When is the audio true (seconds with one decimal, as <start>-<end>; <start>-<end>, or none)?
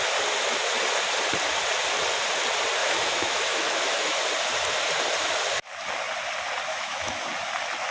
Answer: 0.0-2.8; 4.2-6.7; 7.2-7.9